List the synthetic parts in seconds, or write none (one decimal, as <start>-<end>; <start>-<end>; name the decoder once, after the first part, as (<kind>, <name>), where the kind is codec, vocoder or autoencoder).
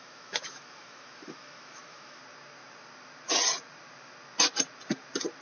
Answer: 0.0-2.2 (autoencoder, DAC-VAE)